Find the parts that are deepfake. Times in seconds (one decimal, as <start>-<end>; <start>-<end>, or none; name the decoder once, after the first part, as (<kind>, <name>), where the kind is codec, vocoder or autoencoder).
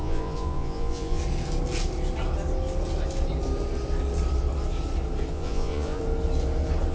0.0-1.2 (vocoder, Vocos); 5.3-6.0